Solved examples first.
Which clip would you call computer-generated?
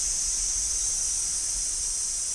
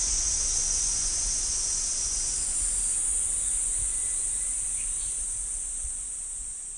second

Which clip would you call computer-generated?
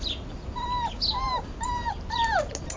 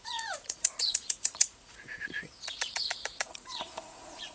second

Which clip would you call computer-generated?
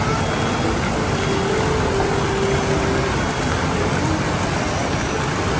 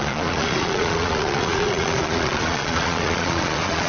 second